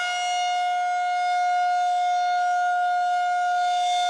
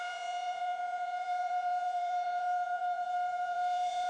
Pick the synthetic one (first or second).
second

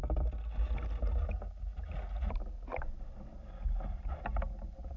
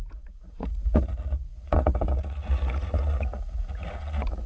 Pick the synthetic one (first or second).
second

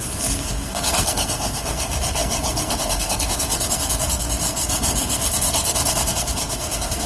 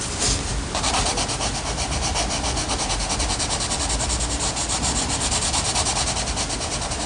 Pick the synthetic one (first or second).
first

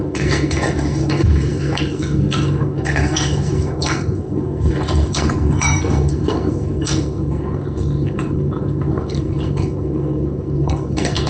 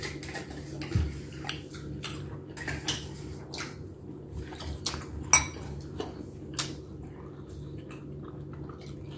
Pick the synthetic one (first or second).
first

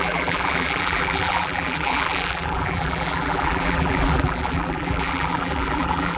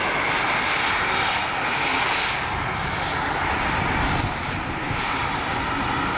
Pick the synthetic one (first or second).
first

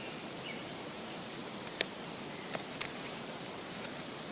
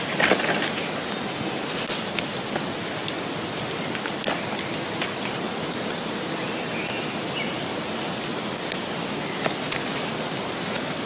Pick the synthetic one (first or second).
first